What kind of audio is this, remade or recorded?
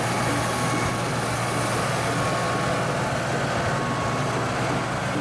recorded